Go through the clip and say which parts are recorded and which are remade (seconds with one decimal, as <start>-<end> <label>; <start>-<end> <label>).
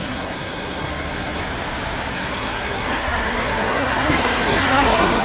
0.0-1.4 remade; 1.4-2.1 recorded; 2.1-5.2 remade